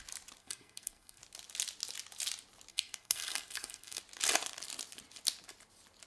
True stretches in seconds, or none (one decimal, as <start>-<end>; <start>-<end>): 0.0-0.4; 1.2-2.7; 4.0-6.1